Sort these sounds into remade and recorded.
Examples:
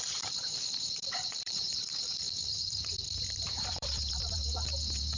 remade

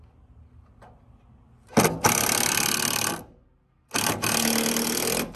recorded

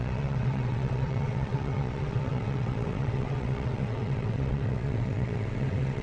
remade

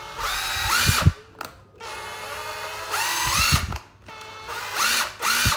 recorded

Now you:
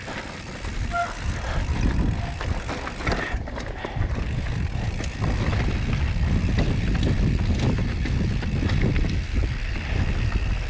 recorded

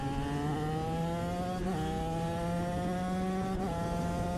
recorded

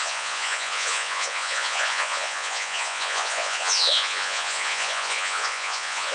remade